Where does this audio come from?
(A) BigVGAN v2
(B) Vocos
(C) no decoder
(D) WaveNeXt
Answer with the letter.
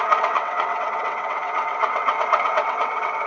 D